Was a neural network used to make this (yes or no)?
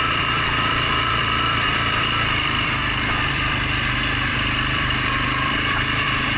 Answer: yes